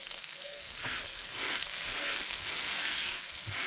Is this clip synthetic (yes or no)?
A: yes